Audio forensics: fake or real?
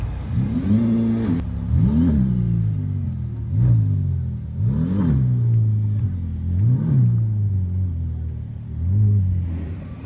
real